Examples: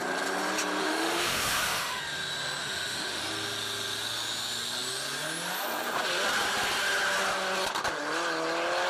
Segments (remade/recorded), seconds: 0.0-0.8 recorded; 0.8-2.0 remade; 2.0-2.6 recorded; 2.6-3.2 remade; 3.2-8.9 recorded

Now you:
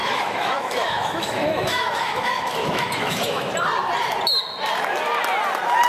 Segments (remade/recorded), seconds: 0.0-3.5 remade; 3.5-5.9 recorded

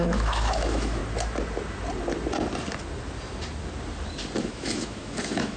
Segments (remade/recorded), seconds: 0.0-1.0 remade; 1.0-4.4 recorded; 4.4-5.6 remade

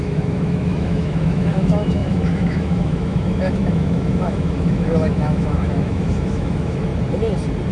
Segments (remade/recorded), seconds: 0.0-6.9 remade; 6.9-7.7 recorded

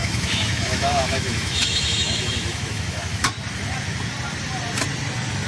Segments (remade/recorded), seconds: 0.0-3.3 remade; 3.3-5.5 recorded

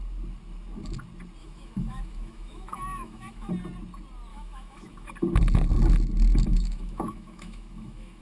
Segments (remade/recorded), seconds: 0.0-1.4 recorded; 1.4-3.5 remade; 3.5-4.3 recorded; 4.3-5.1 remade; 5.1-6.5 recorded; 6.5-8.2 remade